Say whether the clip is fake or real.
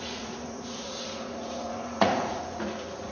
fake